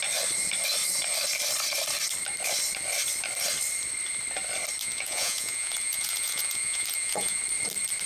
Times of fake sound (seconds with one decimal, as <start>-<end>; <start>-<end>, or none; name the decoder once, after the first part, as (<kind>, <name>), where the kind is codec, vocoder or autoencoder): 4.8-7.4 (vocoder, Vocos)